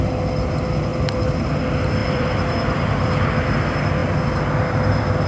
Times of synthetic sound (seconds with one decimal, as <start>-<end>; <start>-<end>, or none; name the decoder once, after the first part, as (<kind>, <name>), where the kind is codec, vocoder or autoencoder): 0.9-1.6 (vocoder, BigVGAN v2); 2.0-3.3